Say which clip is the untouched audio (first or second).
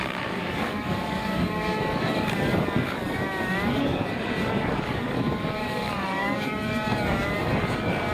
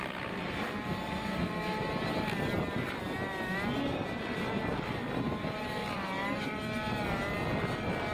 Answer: second